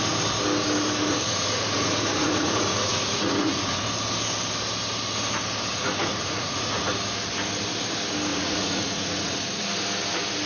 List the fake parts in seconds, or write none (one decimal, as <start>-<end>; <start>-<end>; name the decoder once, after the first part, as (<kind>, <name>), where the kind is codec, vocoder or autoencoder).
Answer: 1.1-3.8 (vocoder, Vocos); 5.7-6.9; 8.3-9.6